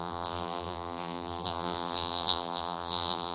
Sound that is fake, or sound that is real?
fake